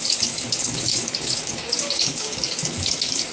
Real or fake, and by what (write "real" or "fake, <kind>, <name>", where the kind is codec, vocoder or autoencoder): fake, codec, DAC